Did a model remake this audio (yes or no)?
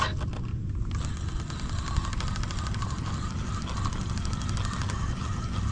no